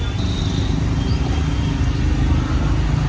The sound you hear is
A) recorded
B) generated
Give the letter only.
A